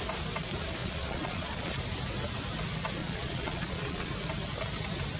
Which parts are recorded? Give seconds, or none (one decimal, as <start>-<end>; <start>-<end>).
0.0-0.8; 1.7-3.0; 4.1-5.2